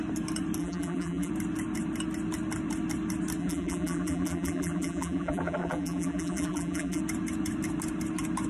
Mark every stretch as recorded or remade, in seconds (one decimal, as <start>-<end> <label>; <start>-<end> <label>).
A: 0.0-0.6 recorded; 0.6-1.3 remade; 1.3-3.4 recorded; 3.4-7.0 remade; 7.0-8.5 recorded